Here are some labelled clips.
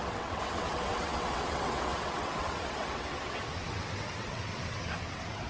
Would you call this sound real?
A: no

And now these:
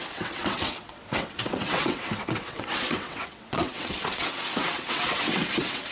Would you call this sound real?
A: no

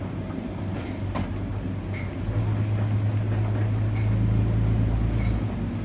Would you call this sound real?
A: yes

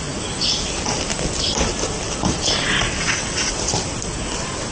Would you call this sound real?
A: yes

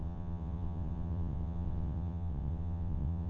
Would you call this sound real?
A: no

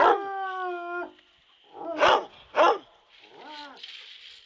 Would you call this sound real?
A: yes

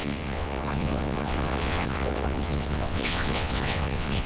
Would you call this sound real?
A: no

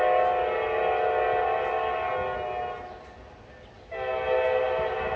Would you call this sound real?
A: yes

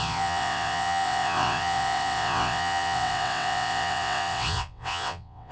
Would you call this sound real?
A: no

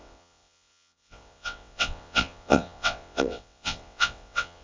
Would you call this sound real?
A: no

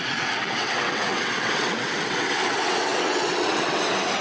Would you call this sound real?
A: no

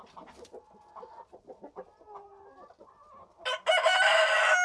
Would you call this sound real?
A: yes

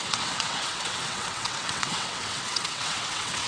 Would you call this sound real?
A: no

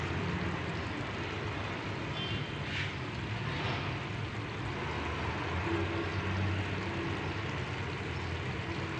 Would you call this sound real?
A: yes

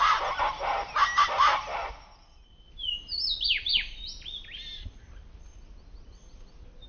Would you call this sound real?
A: yes